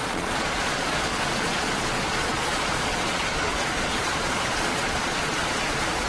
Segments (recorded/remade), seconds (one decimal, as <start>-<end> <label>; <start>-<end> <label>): 0.0-6.1 remade